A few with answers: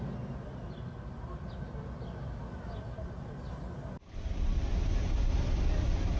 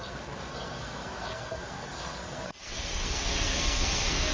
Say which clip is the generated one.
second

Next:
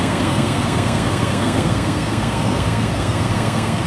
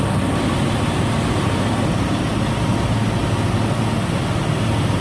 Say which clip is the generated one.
first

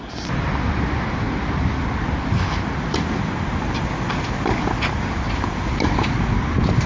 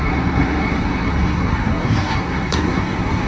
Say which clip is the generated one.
second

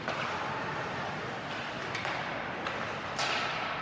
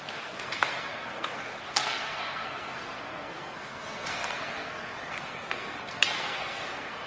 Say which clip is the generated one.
second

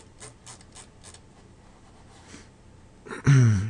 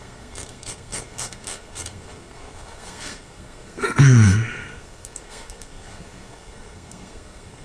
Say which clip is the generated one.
second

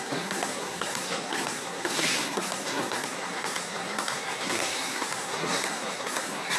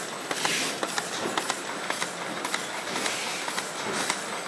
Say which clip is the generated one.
first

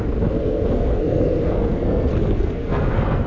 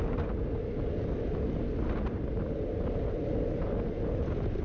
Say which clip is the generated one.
first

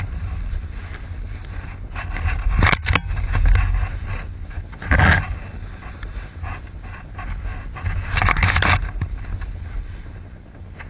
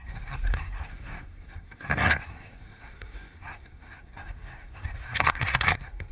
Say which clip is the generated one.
second